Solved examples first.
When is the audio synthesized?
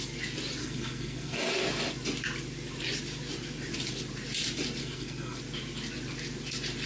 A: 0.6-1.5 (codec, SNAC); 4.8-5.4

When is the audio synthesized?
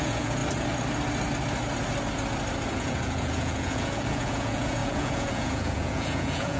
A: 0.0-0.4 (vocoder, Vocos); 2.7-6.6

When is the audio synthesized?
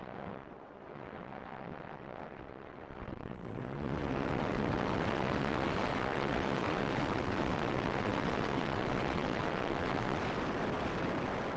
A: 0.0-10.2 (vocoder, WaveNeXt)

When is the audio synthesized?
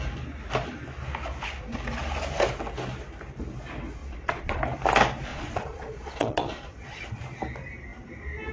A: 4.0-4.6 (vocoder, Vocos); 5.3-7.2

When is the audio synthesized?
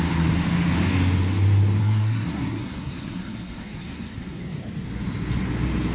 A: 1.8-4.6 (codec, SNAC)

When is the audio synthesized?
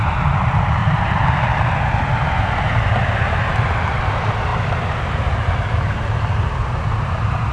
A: 0.8-1.5 (vocoder, BigVGAN v2); 2.7-3.3; 4.5-6.8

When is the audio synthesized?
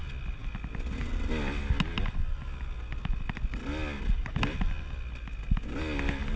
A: none